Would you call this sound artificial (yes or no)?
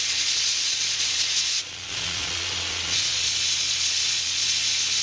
yes